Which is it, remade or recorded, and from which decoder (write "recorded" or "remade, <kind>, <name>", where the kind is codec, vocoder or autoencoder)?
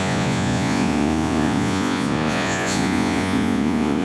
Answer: remade, vocoder, Vocos